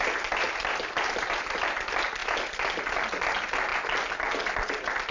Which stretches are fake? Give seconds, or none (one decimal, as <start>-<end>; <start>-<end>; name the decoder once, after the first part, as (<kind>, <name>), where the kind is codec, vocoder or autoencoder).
none